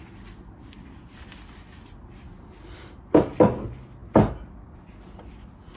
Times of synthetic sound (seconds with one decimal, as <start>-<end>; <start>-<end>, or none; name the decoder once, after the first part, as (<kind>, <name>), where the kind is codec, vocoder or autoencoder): none